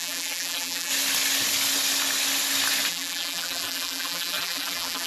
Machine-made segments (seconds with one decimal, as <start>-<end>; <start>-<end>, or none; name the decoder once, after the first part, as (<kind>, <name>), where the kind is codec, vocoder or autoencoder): 0.0-0.9 (vocoder, BigVGAN v2); 2.9-5.1